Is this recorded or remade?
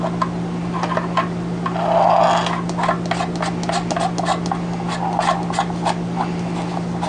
recorded